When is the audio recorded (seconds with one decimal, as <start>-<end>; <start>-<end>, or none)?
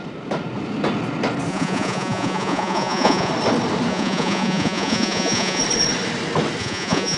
0.0-1.5; 3.3-3.9; 5.6-6.6